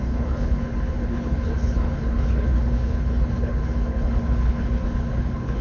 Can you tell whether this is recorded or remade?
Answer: remade